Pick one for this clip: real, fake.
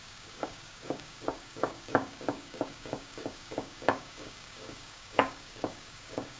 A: fake